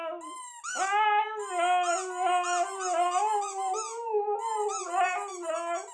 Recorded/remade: recorded